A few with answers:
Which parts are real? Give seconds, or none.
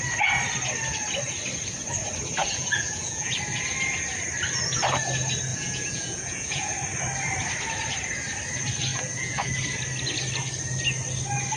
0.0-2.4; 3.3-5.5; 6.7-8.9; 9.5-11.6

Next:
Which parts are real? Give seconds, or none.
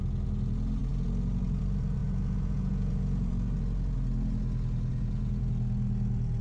0.0-2.0; 3.3-4.9; 5.5-6.4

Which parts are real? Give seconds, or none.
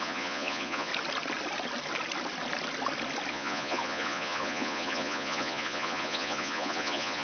0.9-3.3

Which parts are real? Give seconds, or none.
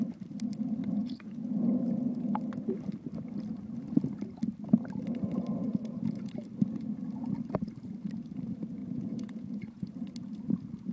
0.0-1.0; 1.7-5.7; 6.3-8.8; 9.9-10.9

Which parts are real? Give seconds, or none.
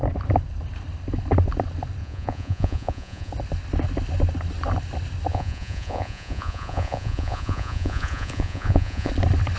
0.0-2.0; 3.3-5.3; 9.1-9.6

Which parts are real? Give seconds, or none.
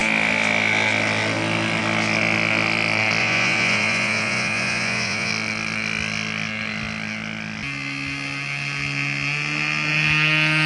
0.0-3.2; 5.3-10.7